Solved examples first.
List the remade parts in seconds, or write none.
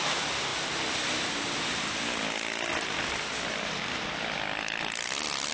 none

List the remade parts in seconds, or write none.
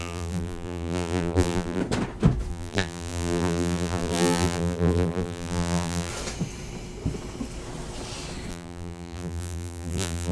0.0-1.8 (vocoder, BigVGAN v2); 2.5-6.1; 8.5-10.3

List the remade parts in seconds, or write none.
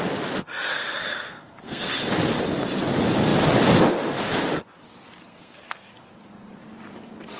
0.7-1.9 (codec, SNAC); 5.3-5.9